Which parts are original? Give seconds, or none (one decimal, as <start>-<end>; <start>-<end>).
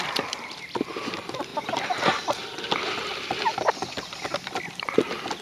0.0-1.5; 4.3-5.4